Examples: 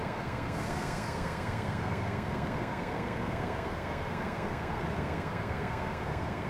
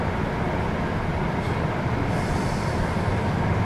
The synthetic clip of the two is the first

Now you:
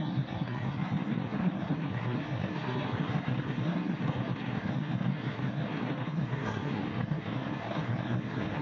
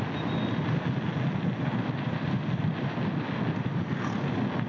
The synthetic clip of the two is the first